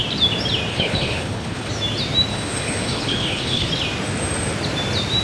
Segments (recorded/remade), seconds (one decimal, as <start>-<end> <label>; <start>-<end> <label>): 0.0-0.7 recorded; 0.7-1.7 remade; 1.7-2.3 recorded; 2.3-3.7 remade; 3.7-5.2 recorded